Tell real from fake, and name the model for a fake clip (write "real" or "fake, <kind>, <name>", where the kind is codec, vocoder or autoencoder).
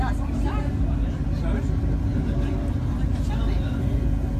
real